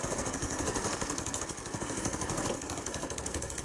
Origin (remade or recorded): remade